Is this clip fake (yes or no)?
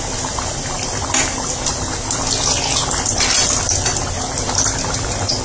no